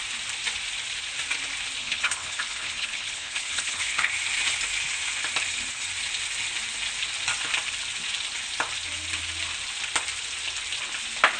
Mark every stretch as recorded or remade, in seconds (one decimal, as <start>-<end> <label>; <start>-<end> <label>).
0.0-1.8 recorded; 1.8-4.1 remade; 4.1-11.4 recorded